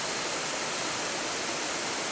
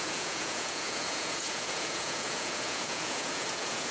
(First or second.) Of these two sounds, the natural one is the first